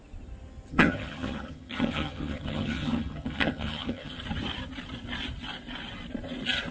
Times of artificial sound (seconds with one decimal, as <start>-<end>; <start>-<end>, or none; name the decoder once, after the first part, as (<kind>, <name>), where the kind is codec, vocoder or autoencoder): 0.7-4.2 (vocoder, HiFi-GAN)